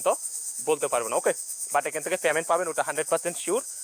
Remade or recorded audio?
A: remade